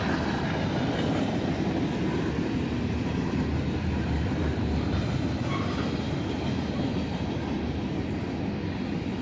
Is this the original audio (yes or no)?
yes